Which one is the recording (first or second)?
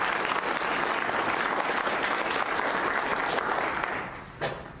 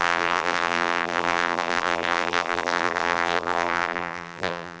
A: first